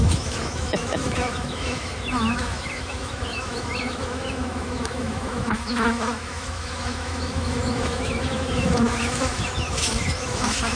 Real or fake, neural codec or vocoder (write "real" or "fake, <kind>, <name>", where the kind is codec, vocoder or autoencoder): fake, autoencoder, DAC-VAE